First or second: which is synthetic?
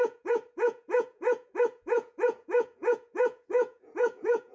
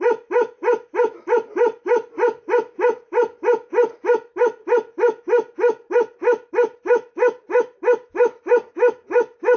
first